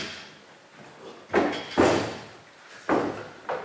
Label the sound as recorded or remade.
recorded